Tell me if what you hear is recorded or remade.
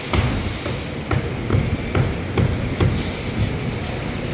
recorded